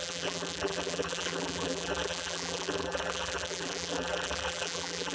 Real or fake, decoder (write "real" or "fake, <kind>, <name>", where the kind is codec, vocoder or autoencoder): fake, vocoder, BigVGAN v2